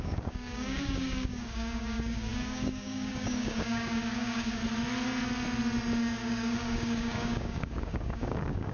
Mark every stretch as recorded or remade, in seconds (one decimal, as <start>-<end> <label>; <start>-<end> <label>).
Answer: 0.0-4.6 remade; 4.6-6.0 recorded; 6.0-8.7 remade